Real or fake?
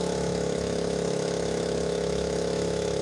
fake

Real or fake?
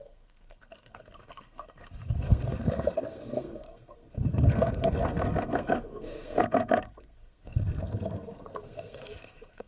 fake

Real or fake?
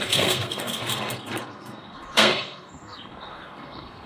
fake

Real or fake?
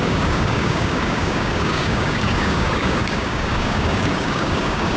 fake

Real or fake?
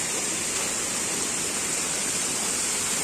real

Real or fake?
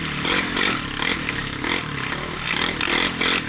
real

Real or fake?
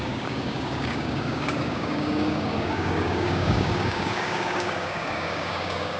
fake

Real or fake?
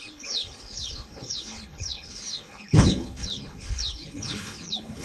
fake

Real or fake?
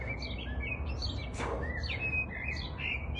real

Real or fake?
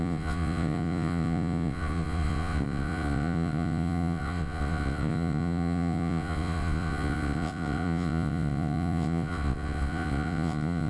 fake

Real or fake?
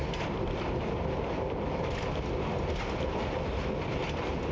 real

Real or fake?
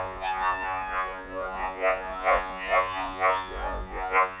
fake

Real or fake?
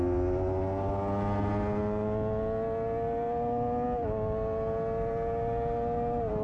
real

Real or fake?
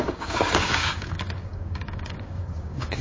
fake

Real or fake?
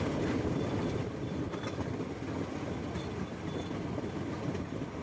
real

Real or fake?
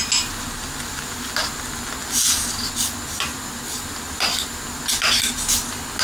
real